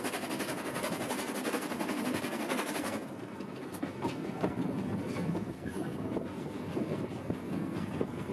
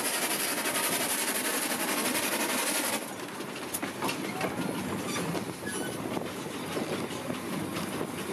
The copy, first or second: first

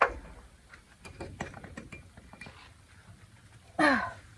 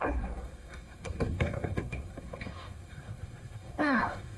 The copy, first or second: second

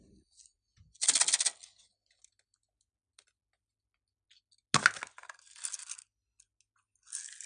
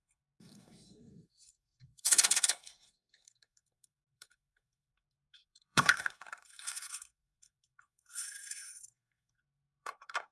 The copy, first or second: second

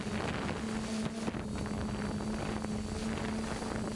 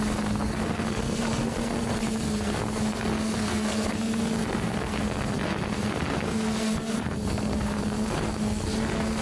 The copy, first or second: second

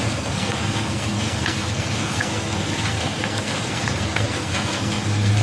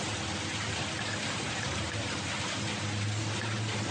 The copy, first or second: first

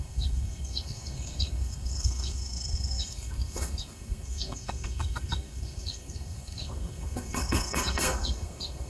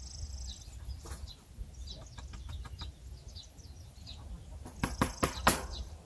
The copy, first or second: first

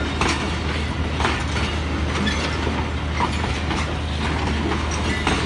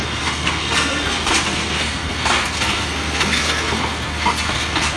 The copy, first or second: second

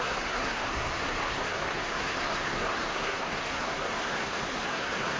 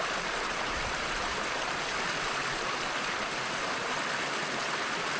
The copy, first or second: first